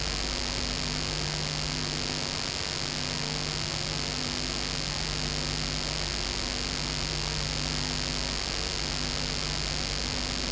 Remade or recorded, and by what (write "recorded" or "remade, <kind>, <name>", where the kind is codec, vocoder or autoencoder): recorded